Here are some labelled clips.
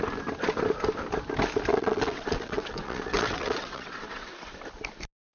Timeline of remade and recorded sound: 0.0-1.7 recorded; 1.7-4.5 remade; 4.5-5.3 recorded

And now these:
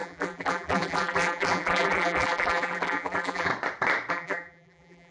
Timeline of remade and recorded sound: 0.0-3.5 remade; 3.5-4.1 recorded; 4.1-5.1 remade

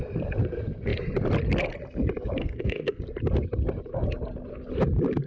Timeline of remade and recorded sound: 0.0-2.4 recorded; 2.4-3.0 remade; 3.0-5.3 recorded

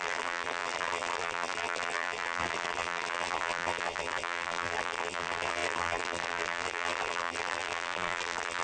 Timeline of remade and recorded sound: 0.0-8.6 remade

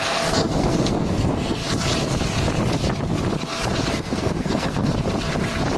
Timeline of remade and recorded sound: 0.0-1.6 remade; 1.6-3.9 recorded; 3.9-4.9 remade; 4.9-5.8 recorded